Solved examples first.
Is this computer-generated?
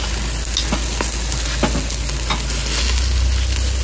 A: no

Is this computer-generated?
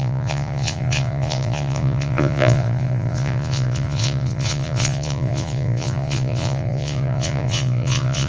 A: yes